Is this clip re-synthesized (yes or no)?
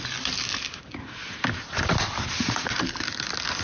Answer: no